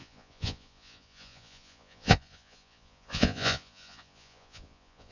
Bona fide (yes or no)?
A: no